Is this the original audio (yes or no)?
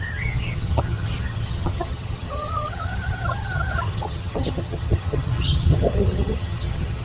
no